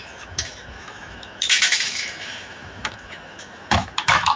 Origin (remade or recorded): remade